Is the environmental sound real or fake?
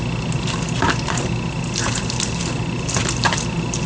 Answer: real